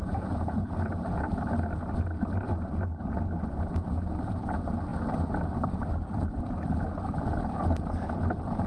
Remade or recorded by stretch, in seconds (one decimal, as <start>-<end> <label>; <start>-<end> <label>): 0.0-0.7 remade; 0.7-8.7 recorded